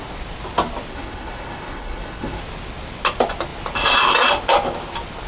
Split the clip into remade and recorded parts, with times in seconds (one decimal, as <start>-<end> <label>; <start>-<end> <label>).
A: 0.0-0.9 recorded; 0.9-2.4 remade; 2.4-5.3 recorded